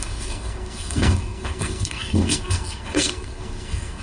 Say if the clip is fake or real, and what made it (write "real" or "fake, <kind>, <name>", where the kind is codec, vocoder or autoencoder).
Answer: fake, codec, SNAC